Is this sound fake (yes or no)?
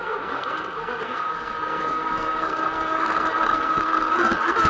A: yes